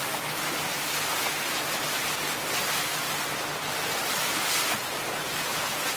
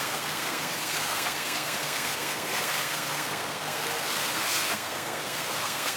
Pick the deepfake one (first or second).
second